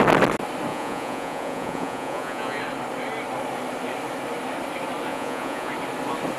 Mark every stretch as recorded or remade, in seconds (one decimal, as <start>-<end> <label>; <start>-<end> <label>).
0.0-0.7 recorded; 0.7-2.6 remade; 2.6-5.1 recorded; 5.1-5.7 remade; 5.7-6.4 recorded